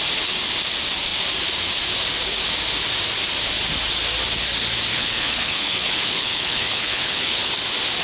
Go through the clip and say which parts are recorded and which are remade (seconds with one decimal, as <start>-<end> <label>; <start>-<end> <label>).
0.0-4.9 recorded; 4.9-7.5 remade; 7.5-8.0 recorded